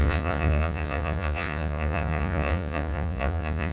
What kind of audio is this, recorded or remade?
remade